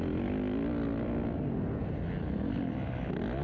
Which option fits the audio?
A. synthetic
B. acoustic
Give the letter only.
B